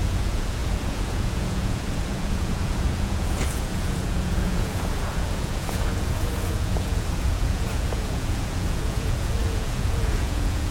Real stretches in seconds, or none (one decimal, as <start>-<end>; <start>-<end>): none